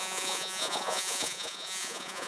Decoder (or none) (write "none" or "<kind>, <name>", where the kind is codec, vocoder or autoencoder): vocoder, Vocos